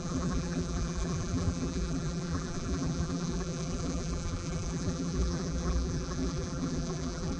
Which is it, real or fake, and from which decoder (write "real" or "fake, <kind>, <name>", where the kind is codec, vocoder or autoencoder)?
fake, vocoder, BigVGAN v2